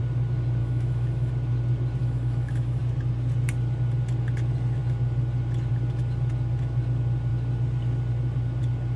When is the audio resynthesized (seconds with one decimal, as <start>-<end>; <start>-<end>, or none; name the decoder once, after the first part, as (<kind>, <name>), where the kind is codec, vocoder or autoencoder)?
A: 0.6-1.3 (autoencoder, DAC-VAE); 2.0-2.8